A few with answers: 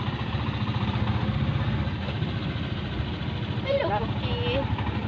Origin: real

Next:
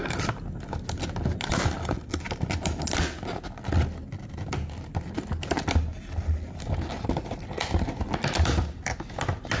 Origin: real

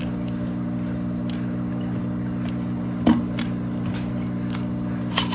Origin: real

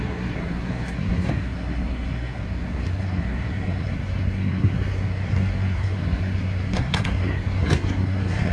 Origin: fake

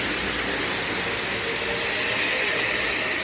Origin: real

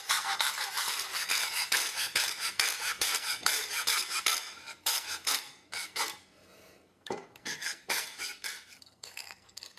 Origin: fake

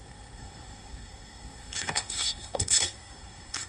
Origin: fake